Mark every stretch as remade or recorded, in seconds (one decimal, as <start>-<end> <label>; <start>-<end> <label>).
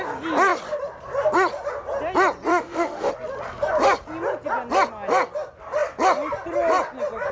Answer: 0.0-2.5 recorded; 2.5-3.1 remade; 3.1-7.3 recorded